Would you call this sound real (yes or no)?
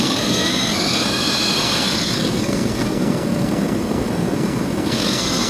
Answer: no